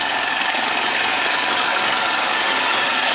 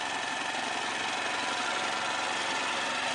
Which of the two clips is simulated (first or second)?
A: first